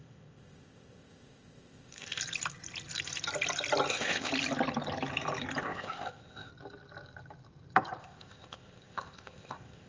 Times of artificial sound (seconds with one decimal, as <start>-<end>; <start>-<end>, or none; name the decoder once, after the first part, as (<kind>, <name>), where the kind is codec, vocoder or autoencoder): 0.0-2.2 (codec, ZipCodec); 3.9-4.3; 5.6-6.5; 8.0-9.9